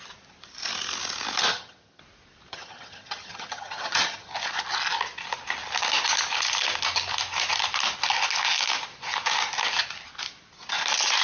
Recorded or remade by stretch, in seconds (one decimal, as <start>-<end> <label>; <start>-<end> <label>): 0.0-1.5 recorded; 1.5-2.0 remade; 2.0-2.5 recorded; 2.5-4.3 remade; 4.3-11.2 recorded